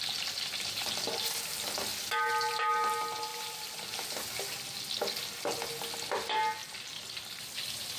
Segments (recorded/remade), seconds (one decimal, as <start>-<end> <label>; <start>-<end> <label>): 0.0-3.3 recorded; 3.3-3.8 remade; 3.8-6.6 recorded; 6.6-7.4 remade; 7.4-8.0 recorded